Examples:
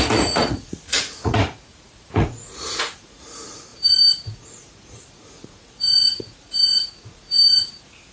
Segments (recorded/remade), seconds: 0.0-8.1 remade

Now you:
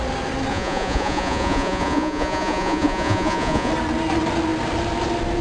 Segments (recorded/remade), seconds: 0.0-0.5 recorded; 0.5-3.7 remade; 3.7-5.4 recorded

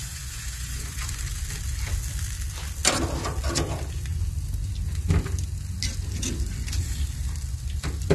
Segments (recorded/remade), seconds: 0.0-1.2 remade; 1.2-8.1 recorded